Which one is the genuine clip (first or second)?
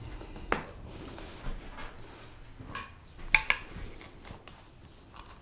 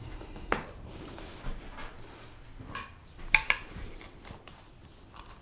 first